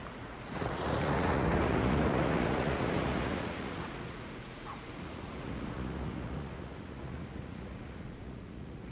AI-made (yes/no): yes